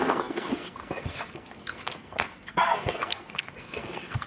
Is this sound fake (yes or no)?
yes